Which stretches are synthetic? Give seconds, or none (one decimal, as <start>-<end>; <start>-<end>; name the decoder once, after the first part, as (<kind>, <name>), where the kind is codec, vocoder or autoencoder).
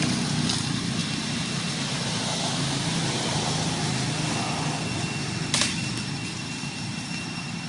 none